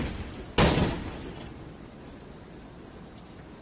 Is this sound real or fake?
real